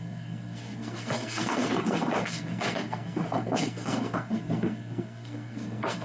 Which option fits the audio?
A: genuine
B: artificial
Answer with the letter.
B